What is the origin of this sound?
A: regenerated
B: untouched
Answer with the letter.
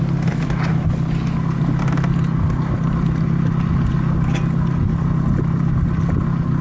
B